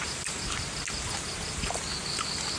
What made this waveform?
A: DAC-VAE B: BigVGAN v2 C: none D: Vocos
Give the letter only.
C